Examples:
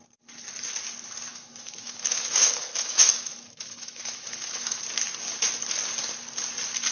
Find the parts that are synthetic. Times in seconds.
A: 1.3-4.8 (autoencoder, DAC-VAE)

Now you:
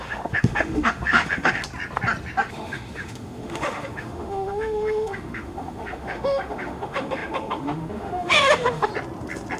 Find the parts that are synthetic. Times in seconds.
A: 0.0-1.6 (autoencoder, DAC-VAE); 2.5-8.9

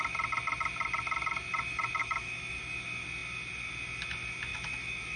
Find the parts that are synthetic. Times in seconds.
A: 2.0-2.6 (autoencoder, DAC-VAE); 4.5-5.2

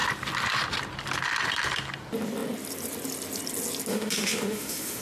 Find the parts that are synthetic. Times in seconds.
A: 3.9-5.0 (autoencoder, DAC-VAE)

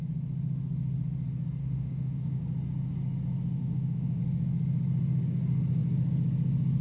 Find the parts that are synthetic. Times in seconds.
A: 1.6-2.4 (autoencoder, DAC-VAE); 3.6-4.2